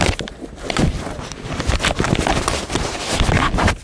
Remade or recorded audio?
recorded